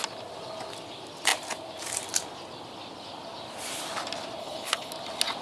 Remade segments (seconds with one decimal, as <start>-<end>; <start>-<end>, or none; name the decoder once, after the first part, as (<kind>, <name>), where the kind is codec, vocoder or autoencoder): 4.4-4.9 (codec, HILCodec)